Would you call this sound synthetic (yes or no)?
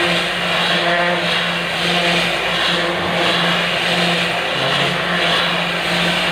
no